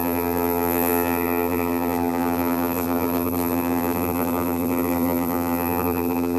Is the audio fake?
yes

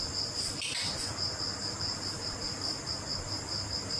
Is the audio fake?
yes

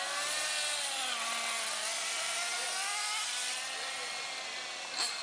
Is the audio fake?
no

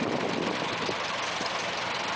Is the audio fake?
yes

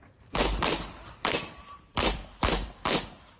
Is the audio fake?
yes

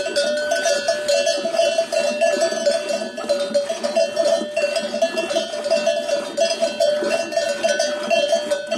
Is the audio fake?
no